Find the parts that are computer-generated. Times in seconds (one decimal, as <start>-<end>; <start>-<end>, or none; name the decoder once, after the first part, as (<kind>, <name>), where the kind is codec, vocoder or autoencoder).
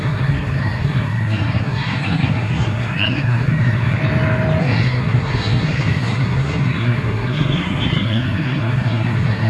0.0-4.0 (codec, SNAC); 4.6-9.5